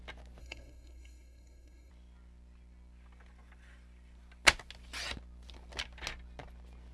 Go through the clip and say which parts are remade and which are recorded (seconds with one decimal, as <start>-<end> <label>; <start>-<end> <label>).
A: 0.0-0.4 recorded; 0.4-1.9 remade; 1.9-6.9 recorded